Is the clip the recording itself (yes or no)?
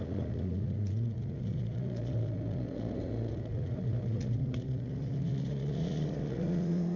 no